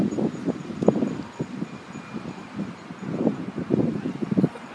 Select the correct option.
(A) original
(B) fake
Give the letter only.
A